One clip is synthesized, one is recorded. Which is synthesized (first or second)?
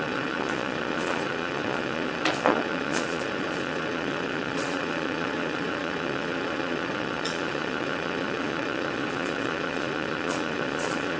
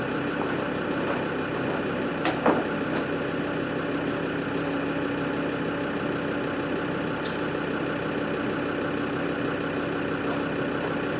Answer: first